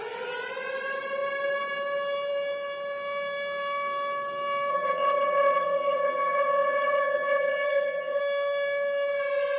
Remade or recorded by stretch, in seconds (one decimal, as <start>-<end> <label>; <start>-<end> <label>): 0.0-4.7 recorded; 4.7-8.2 remade; 8.2-9.6 recorded